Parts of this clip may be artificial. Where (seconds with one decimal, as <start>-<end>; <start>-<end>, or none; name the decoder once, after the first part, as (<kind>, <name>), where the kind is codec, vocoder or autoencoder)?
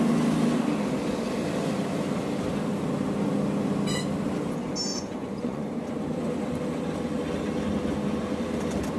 4.9-5.7 (vocoder, Vocos)